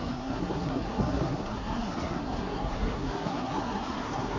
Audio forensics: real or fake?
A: fake